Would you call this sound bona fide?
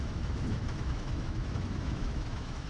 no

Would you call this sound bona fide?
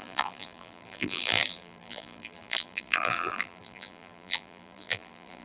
no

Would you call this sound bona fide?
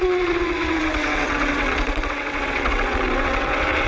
no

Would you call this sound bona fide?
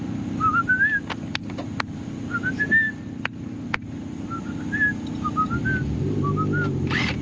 yes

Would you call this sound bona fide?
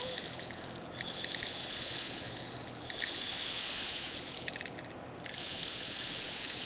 yes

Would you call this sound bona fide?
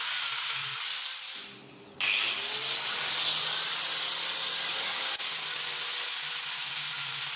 yes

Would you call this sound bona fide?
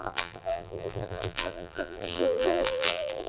no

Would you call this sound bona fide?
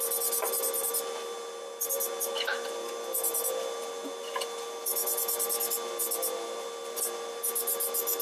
yes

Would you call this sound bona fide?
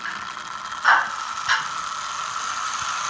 yes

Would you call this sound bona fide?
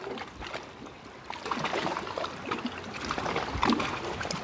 yes